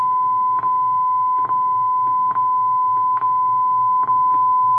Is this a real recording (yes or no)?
yes